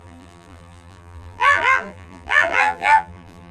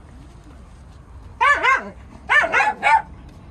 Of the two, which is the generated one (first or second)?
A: first